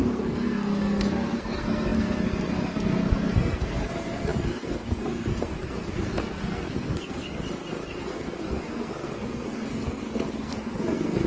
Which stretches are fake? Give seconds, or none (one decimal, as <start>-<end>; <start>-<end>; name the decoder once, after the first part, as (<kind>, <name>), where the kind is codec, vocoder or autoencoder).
0.0-11.3 (codec, SNAC)